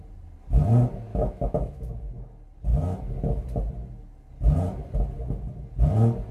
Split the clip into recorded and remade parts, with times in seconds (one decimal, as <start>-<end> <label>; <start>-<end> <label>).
0.0-1.1 recorded; 1.1-1.9 remade; 1.9-6.3 recorded